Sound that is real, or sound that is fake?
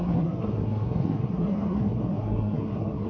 fake